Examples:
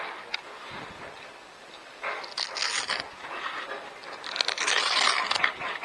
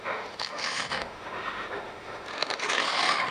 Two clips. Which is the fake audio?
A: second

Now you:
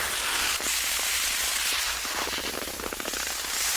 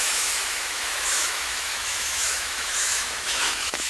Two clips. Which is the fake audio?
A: second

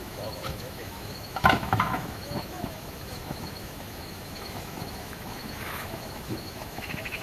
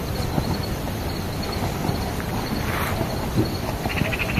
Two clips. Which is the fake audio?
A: first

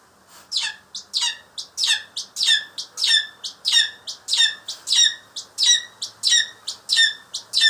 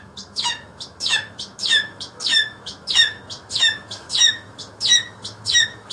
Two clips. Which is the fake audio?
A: second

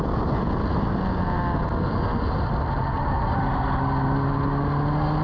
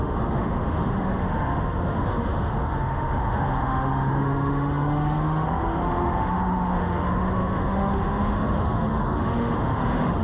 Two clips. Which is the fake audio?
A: second